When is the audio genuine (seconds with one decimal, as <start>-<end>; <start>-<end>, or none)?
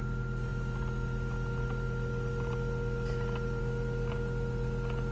0.0-5.1